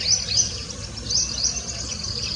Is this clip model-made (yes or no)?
no